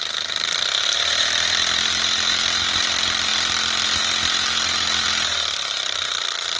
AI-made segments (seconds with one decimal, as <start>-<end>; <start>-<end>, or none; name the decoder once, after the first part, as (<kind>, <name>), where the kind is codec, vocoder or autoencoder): none